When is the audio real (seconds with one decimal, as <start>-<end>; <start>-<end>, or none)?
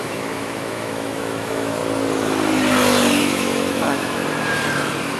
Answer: 1.8-3.2; 4.2-5.2